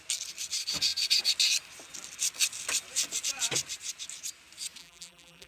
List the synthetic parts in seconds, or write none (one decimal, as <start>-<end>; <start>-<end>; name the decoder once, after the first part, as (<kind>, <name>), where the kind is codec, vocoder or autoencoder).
4.8-5.5 (vocoder, BigVGAN v2)